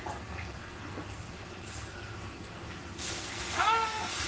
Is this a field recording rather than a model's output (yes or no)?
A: no